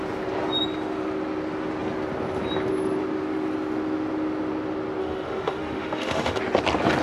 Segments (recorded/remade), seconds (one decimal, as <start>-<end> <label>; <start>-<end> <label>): 0.0-5.0 recorded; 5.0-6.4 remade; 6.4-7.0 recorded